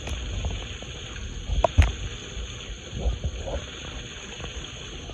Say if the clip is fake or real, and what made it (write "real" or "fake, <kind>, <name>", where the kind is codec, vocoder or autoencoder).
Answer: real